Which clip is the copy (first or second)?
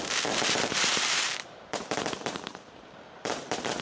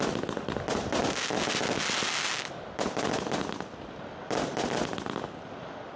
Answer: first